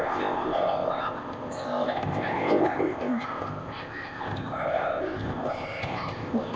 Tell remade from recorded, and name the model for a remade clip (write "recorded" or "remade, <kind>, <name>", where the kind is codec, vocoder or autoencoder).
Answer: remade, codec, ZipCodec